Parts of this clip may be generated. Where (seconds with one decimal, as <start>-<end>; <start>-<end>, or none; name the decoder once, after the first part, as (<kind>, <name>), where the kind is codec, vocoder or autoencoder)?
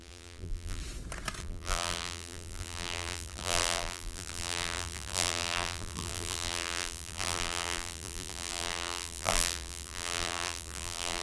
0.0-0.8 (vocoder, BigVGAN v2); 1.4-11.2